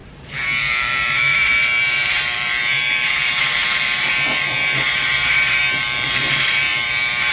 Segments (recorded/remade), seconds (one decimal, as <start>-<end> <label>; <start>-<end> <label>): 0.0-7.3 remade